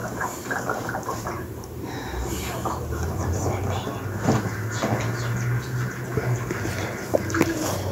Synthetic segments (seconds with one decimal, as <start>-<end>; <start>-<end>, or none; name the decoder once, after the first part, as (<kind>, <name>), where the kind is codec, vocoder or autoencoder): 0.0-3.2 (vocoder, BigVGAN v2)